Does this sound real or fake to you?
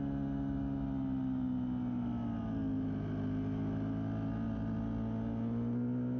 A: real